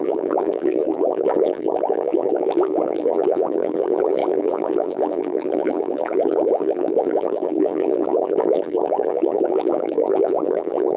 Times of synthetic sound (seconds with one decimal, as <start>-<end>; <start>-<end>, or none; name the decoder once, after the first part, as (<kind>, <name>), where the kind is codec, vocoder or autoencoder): 0.0-11.0 (vocoder, BigVGAN v2)

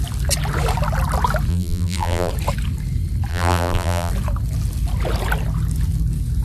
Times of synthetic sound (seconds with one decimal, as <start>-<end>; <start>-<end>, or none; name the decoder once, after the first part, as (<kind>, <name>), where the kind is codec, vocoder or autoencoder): 1.5-2.3 (vocoder, BigVGAN v2); 3.3-4.1

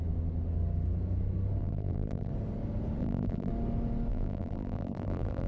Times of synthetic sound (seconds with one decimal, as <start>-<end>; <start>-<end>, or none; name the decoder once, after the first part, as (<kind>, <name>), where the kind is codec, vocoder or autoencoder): 1.6-2.3 (vocoder, BigVGAN v2); 3.0-3.5; 4.1-5.5

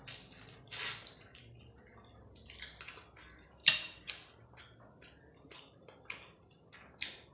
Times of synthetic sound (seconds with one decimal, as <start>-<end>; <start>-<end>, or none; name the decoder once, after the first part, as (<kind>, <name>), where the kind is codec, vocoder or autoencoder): 1.0-1.8 (vocoder, BigVGAN v2); 3.6-4.6